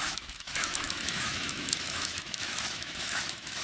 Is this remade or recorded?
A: remade